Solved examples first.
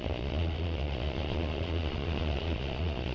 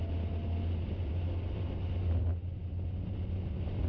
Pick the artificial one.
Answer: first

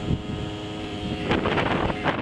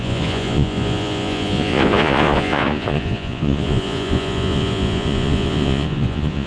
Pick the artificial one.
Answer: second